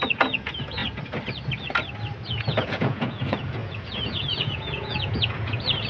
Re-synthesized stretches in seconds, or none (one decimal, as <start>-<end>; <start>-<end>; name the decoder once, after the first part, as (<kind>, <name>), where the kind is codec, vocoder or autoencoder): 0.0-0.8 (vocoder, Vocos); 2.3-5.9